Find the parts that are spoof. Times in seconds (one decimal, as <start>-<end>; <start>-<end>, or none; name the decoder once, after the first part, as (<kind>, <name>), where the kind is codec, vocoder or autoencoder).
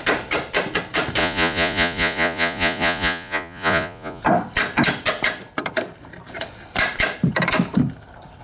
1.2-4.2 (vocoder, Vocos)